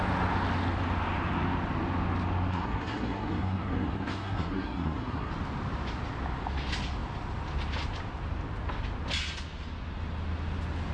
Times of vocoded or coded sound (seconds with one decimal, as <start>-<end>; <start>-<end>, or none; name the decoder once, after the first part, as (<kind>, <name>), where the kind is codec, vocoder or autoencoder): 2.5-5.3 (codec, SNAC)